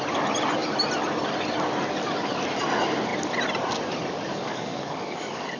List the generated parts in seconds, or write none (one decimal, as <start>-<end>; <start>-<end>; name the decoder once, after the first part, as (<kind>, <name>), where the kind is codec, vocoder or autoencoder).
4.3-5.6 (codec, DAC)